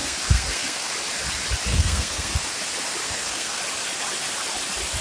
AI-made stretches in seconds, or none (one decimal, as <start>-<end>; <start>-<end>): 0.0-0.9; 1.7-2.4; 3.0-3.6